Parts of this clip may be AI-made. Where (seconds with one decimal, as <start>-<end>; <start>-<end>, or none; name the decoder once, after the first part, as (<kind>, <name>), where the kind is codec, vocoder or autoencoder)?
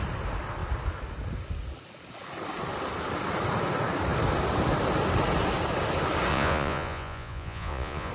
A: 6.3-8.1 (vocoder, Vocos)